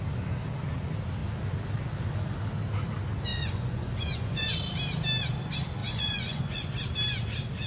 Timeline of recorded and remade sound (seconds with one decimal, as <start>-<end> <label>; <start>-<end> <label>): 0.0-3.3 recorded; 3.3-4.5 remade; 4.5-5.8 recorded; 5.8-6.7 remade; 6.7-7.7 recorded